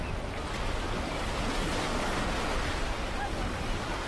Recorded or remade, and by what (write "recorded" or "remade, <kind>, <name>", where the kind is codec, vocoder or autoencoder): recorded